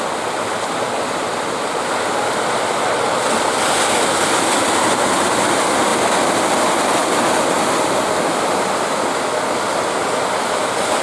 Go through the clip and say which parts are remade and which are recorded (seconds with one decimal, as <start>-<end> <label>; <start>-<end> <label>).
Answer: 0.0-11.0 recorded